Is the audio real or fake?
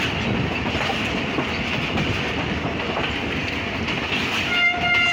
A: real